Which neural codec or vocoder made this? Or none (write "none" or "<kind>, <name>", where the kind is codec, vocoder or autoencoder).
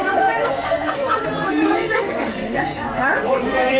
codec, SNAC